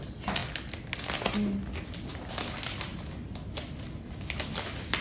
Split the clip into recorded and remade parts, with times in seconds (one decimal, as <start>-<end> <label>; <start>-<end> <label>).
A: 0.0-5.0 recorded